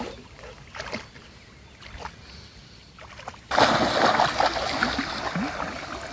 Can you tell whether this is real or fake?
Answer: real